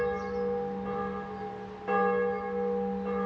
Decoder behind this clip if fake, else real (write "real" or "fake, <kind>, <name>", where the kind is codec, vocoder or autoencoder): real